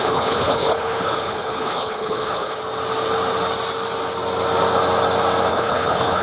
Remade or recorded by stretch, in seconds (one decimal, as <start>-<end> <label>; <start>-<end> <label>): 0.0-2.6 remade; 2.6-5.5 recorded; 5.5-6.2 remade